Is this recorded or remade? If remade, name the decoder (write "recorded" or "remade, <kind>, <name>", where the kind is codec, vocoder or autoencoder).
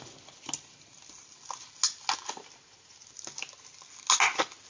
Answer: recorded